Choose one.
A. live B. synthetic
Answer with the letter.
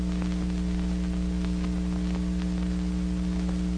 A